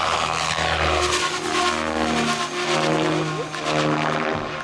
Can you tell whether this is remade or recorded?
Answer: recorded